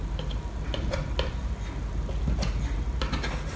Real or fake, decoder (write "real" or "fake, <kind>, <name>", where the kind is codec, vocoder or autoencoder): real